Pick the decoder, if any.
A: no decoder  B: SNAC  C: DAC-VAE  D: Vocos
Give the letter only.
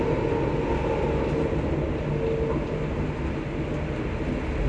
A